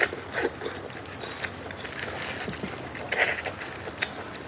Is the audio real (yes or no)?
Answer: yes